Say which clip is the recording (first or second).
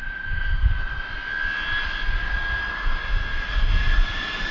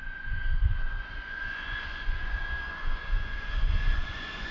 first